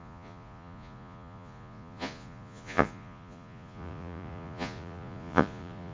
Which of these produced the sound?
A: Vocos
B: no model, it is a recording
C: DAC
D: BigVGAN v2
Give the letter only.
A